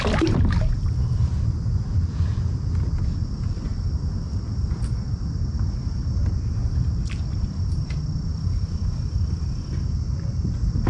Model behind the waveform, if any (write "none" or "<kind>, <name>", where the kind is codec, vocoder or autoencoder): none